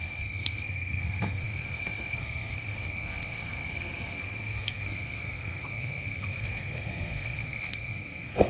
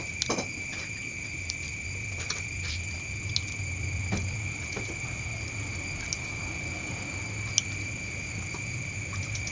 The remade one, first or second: first